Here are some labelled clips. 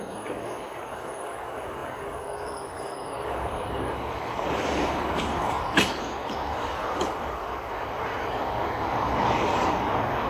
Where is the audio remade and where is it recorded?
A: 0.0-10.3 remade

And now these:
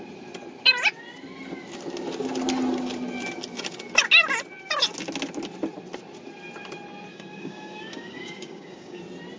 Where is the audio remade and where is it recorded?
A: 0.0-7.1 recorded; 7.1-9.0 remade; 9.0-9.4 recorded